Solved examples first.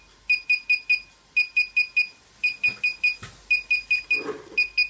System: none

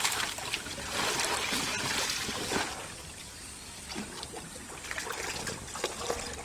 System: none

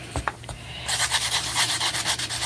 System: vocoder, BigVGAN v2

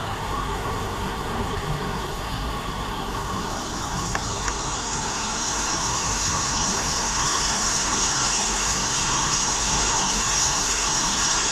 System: codec, SNAC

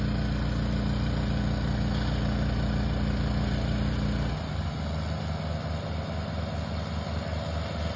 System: none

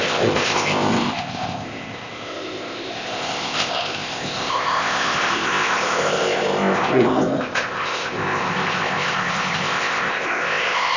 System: codec, ZipCodec